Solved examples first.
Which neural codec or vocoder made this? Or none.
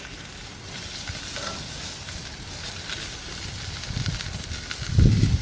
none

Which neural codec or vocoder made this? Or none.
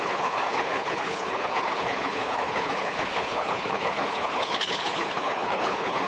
codec, HILCodec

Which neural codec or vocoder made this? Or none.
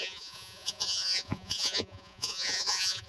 vocoder, Vocos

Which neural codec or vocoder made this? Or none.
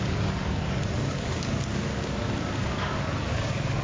codec, DAC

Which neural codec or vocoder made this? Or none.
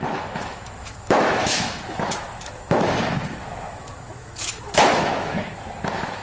autoencoder, DAC-VAE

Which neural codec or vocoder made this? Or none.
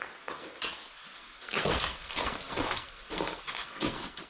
codec, SNAC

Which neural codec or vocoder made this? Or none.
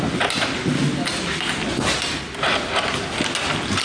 none